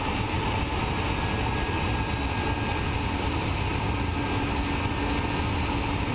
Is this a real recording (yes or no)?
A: yes